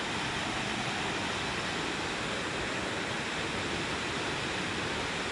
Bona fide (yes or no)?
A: yes